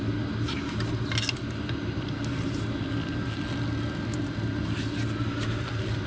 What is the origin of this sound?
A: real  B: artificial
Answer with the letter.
A